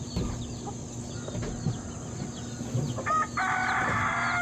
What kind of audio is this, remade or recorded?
recorded